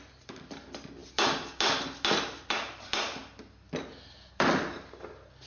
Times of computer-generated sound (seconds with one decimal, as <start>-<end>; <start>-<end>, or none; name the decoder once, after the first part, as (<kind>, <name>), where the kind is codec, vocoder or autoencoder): none